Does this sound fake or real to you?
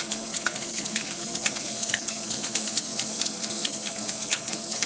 fake